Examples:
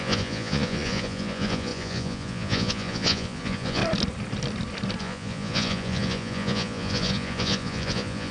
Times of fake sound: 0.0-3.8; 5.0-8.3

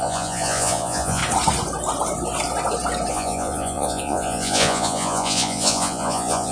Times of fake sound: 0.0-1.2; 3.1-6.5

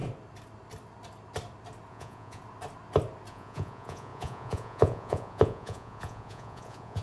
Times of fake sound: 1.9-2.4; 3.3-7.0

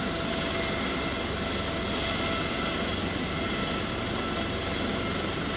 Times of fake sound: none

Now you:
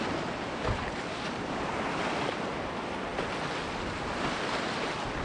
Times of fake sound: none

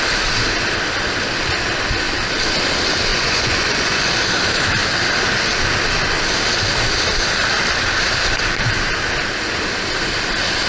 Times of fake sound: 3.1-4.1

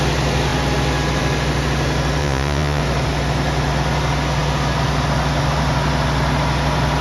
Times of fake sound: 2.2-2.8